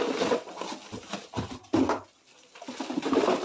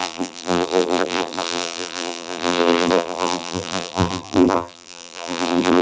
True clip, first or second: first